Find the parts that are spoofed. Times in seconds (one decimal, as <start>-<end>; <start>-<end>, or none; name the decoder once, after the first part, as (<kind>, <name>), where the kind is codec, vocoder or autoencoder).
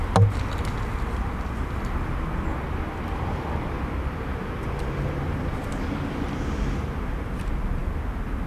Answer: none